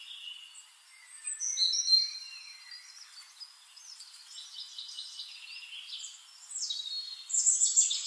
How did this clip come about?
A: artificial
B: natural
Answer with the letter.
B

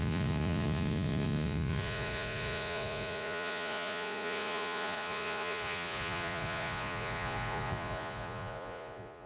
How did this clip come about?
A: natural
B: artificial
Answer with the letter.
B